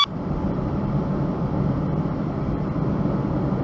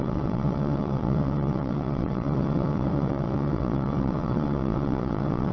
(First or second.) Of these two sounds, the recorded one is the first